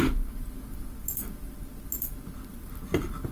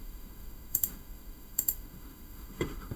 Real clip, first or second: first